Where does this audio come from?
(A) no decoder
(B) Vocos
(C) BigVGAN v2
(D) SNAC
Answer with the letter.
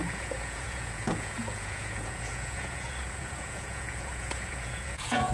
B